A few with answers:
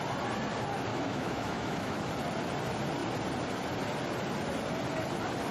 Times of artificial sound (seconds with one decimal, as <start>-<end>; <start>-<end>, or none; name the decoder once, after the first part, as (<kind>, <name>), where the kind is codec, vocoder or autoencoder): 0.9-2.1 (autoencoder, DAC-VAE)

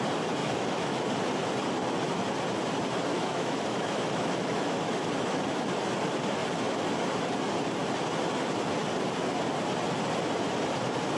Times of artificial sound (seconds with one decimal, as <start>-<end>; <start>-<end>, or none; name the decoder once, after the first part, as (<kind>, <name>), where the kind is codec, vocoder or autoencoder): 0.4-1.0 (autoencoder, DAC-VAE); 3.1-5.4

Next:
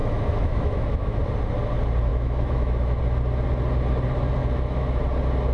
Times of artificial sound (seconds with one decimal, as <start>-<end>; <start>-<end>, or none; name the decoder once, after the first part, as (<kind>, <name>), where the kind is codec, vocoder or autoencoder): 0.0-1.2 (autoencoder, DAC-VAE); 2.1-3.0; 4.4-5.0